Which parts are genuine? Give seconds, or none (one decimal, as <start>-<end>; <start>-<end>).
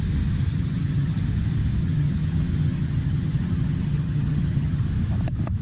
0.0-0.5; 1.2-1.8; 4.8-5.6